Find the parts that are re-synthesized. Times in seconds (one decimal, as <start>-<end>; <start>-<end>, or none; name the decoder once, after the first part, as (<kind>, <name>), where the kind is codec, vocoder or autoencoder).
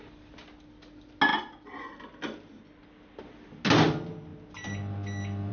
none